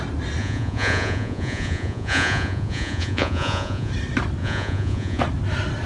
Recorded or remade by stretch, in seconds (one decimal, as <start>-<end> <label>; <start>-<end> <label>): 0.0-0.4 recorded; 0.4-3.9 remade; 3.9-4.4 recorded; 4.4-5.2 remade; 5.2-5.9 recorded